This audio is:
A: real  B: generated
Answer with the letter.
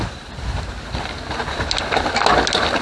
A